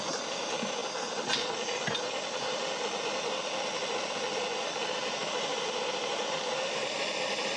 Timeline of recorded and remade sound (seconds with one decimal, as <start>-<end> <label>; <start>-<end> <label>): 0.0-5.5 recorded; 5.5-7.0 remade; 7.0-7.6 recorded